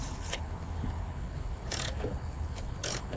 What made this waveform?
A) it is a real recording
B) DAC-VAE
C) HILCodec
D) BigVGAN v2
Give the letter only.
C